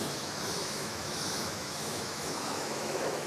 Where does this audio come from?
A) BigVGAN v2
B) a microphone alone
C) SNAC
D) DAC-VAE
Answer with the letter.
D